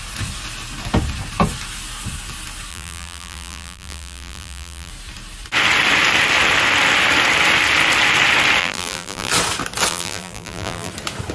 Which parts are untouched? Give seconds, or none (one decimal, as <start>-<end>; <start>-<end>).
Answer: 0.0-2.7; 4.9-8.6; 9.3-9.9; 10.9-11.3